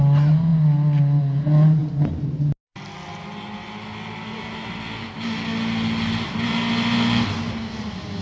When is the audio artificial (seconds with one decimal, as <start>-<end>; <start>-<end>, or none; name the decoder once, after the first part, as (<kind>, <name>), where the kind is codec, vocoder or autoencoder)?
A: none